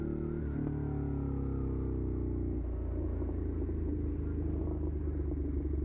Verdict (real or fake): real